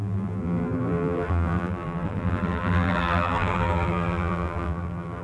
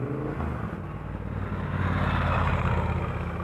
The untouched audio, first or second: second